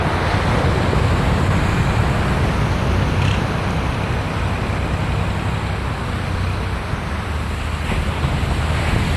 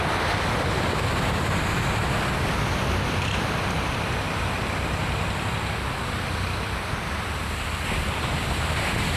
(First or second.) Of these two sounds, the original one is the first